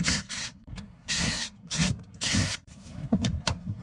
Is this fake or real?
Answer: fake